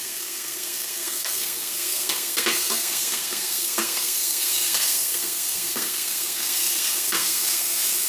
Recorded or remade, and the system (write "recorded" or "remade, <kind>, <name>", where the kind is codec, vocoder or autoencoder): remade, codec, SNAC